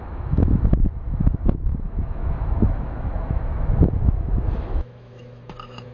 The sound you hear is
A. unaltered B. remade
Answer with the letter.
B